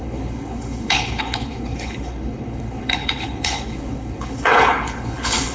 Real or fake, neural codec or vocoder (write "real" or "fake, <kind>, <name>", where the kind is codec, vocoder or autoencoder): fake, codec, HILCodec